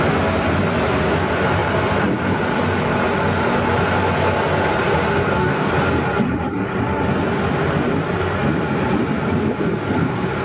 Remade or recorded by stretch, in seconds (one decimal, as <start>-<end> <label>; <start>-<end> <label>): 0.0-5.2 recorded; 5.2-5.7 remade; 5.7-10.4 recorded